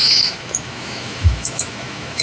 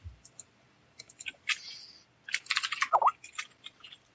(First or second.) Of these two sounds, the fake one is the first